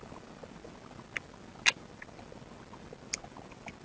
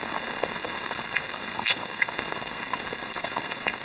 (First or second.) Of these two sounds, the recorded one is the first